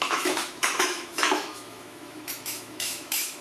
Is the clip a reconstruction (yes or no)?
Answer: yes